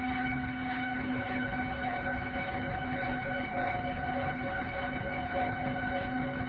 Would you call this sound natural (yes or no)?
no